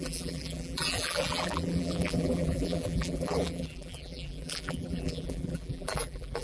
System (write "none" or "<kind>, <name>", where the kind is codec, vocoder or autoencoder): vocoder, BigVGAN v2